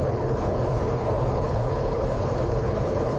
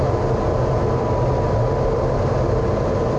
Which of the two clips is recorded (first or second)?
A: second